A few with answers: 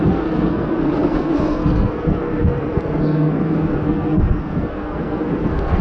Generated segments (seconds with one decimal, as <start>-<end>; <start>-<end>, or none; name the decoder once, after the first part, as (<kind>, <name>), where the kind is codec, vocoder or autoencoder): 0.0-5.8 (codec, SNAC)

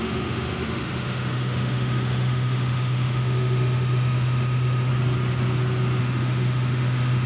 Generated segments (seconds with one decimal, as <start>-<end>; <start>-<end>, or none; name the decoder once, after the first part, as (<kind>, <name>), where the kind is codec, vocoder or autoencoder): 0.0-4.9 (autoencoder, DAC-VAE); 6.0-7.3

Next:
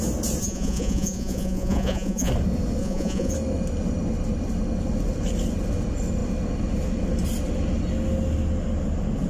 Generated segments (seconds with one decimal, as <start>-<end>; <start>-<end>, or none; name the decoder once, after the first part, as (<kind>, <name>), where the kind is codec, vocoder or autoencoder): 0.4-2.3 (vocoder, Vocos); 2.8-3.3

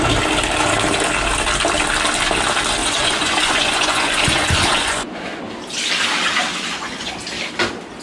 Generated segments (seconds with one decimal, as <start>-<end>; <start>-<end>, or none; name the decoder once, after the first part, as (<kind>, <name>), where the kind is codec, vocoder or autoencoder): 2.8-5.4 (vocoder, Vocos); 6.5-7.1

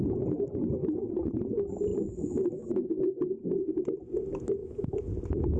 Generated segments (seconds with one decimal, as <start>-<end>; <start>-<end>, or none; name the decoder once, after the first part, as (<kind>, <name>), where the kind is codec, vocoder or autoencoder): 0.8-1.4 (autoencoder, DAC-VAE); 1.9-3.3; 4.6-5.1

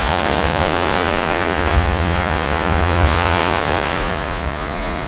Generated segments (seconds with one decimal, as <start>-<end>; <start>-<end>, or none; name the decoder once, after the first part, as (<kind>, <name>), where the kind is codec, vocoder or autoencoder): 0.0-5.1 (vocoder, Vocos)

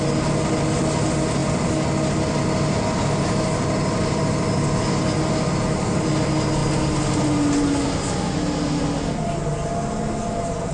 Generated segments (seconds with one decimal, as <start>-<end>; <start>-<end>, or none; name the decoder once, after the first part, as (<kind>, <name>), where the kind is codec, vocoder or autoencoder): none